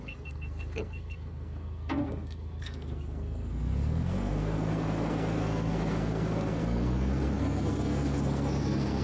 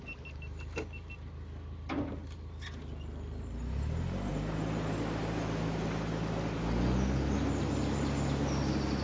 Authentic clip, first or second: second